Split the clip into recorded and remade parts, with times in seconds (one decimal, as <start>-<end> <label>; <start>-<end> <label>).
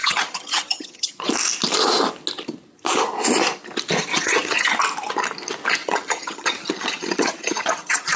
0.0-1.1 remade; 1.1-4.1 recorded; 4.1-4.8 remade; 4.8-5.8 recorded; 5.8-8.2 remade